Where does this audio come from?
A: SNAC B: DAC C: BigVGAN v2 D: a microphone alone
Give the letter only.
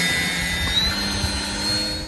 D